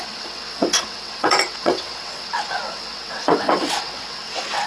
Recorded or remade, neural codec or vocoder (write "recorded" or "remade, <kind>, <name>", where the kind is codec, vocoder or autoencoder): remade, vocoder, WaveNeXt